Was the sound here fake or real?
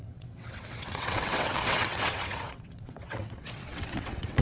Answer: fake